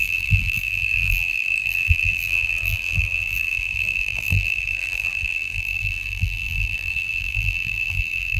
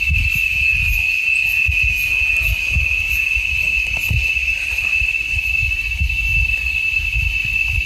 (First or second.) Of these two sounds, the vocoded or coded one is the first